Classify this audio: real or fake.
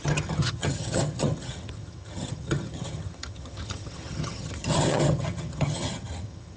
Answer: fake